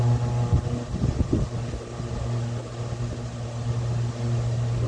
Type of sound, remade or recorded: recorded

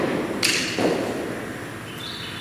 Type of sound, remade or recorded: recorded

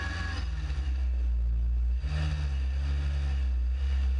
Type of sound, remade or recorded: recorded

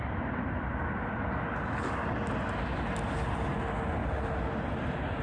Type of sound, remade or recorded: recorded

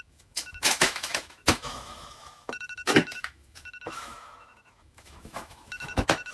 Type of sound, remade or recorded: remade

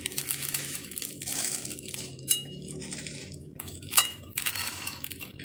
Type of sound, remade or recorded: remade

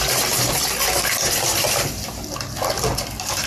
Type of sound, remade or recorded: recorded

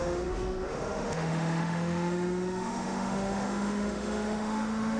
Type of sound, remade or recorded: remade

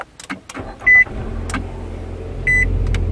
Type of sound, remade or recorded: recorded